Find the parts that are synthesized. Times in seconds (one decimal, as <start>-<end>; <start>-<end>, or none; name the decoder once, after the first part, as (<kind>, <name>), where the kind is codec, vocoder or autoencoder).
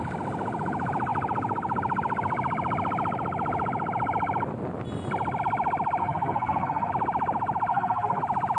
6.0-6.9 (codec, SNAC); 7.7-8.2